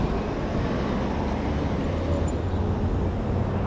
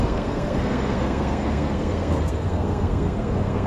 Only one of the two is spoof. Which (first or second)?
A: second